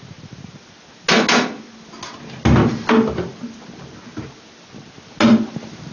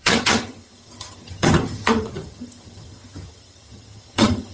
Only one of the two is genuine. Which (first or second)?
first